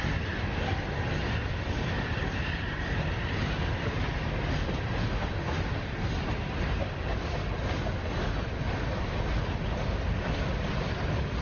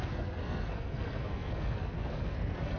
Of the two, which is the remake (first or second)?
second